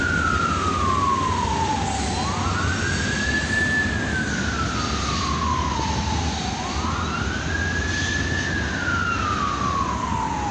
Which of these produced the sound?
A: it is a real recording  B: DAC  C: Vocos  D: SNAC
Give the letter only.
A